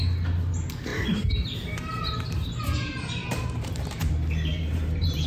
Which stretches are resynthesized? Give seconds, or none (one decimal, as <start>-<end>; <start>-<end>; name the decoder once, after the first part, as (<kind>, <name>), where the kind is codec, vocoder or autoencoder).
0.9-4.1 (vocoder, BigVGAN v2); 4.5-5.3